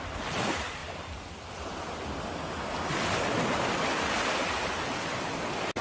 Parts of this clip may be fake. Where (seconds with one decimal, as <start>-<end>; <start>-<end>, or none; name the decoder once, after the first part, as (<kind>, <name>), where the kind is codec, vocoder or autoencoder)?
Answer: none